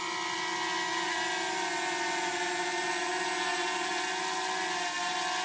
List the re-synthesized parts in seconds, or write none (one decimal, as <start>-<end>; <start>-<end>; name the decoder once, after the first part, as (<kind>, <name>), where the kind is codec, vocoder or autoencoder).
none